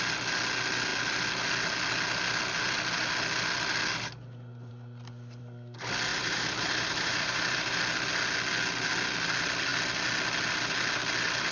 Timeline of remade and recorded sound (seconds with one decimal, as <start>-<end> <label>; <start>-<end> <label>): 0.0-6.1 recorded; 6.1-7.8 remade; 7.8-11.5 recorded